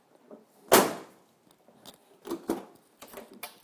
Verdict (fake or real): real